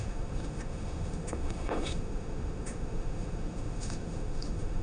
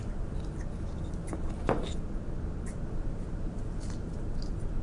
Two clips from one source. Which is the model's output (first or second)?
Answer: first